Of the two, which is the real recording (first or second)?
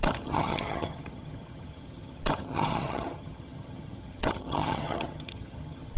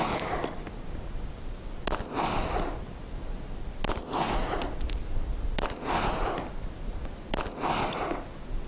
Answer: second